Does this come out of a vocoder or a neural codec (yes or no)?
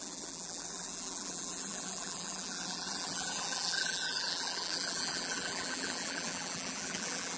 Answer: yes